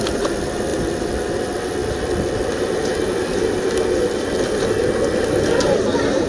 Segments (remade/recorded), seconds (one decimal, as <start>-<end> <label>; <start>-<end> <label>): 0.0-0.7 recorded; 0.7-1.4 remade; 1.4-1.8 recorded; 1.8-4.8 remade; 4.8-6.3 recorded